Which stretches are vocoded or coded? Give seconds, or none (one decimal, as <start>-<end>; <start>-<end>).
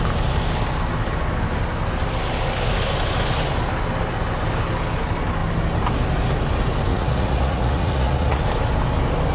6.9-8.4